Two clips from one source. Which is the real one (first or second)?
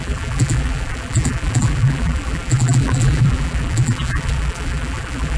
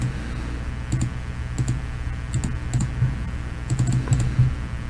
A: second